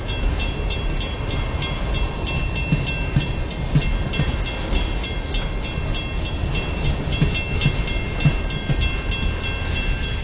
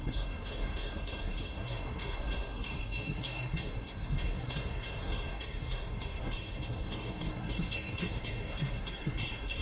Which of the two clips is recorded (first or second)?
first